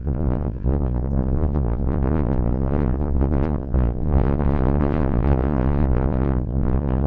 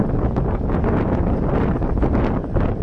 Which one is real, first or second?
second